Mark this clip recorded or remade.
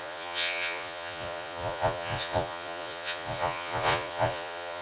remade